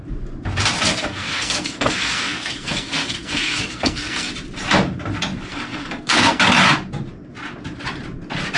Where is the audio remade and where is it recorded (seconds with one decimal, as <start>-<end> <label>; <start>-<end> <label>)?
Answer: 0.0-0.9 recorded; 0.9-4.3 remade; 4.3-5.5 recorded; 5.5-6.4 remade; 6.4-8.6 recorded